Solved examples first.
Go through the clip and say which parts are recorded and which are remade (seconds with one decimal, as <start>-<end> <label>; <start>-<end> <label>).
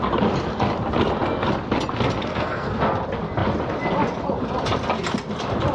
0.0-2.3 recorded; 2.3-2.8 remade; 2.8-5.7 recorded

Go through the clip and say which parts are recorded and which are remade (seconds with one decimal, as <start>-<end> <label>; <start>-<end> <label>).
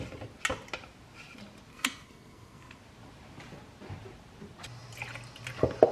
0.0-1.7 recorded; 1.7-2.8 remade; 2.8-5.9 recorded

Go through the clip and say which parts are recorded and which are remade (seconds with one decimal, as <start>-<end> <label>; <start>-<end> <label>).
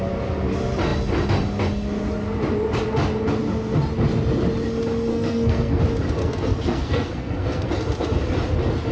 0.0-5.1 recorded; 5.1-5.8 remade; 5.8-6.2 recorded; 6.2-7.7 remade; 7.7-8.9 recorded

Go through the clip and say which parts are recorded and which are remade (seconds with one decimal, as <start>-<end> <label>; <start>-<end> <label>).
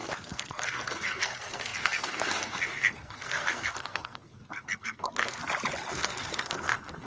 0.0-5.4 remade; 5.4-5.9 recorded; 5.9-7.1 remade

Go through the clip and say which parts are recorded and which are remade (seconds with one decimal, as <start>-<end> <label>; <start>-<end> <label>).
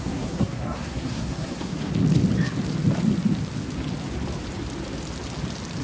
0.0-1.9 remade; 1.9-5.8 recorded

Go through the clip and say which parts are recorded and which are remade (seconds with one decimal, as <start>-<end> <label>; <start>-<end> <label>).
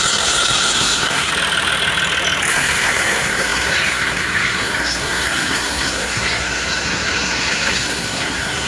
0.0-1.3 remade; 1.3-2.5 recorded; 2.5-8.7 remade